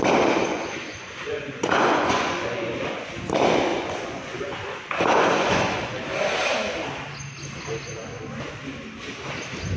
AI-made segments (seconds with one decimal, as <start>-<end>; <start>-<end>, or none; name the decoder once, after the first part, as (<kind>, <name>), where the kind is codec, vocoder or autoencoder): 0.5-3.1 (vocoder, Vocos); 3.7-5.9